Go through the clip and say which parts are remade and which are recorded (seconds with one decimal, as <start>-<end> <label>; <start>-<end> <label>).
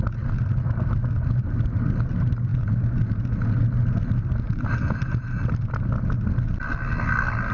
0.0-7.5 recorded